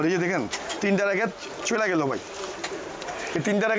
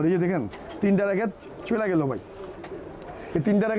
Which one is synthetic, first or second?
first